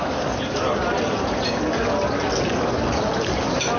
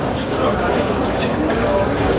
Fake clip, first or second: second